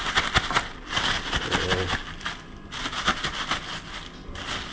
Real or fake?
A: real